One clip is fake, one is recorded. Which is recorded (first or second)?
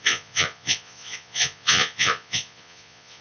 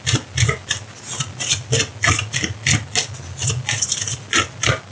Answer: second